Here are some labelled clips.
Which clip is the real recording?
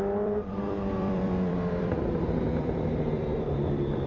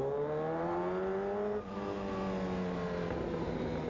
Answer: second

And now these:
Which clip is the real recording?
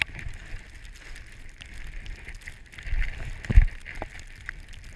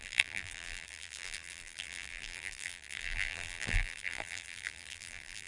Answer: first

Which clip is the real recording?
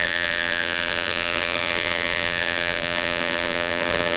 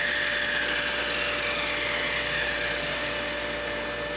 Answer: second